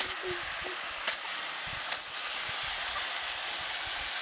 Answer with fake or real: real